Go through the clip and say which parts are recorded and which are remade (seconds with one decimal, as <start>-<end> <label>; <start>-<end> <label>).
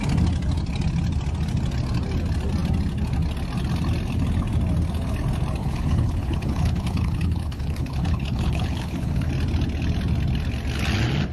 0.0-5.6 recorded; 5.6-9.3 remade; 9.3-11.3 recorded